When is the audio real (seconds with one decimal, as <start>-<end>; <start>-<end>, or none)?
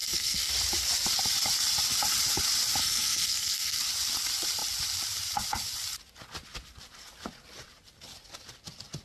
0.5-2.8; 3.8-9.0